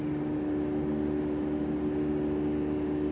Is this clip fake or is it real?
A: real